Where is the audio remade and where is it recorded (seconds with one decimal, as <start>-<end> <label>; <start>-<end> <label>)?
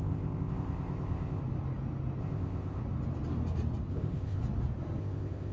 0.0-1.4 remade; 1.4-2.2 recorded; 2.2-2.8 remade; 2.8-3.9 recorded; 3.9-4.4 remade; 4.4-5.0 recorded; 5.0-5.5 remade